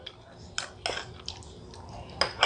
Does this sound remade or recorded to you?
recorded